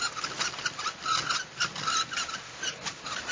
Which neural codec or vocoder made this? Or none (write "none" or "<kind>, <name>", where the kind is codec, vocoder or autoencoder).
none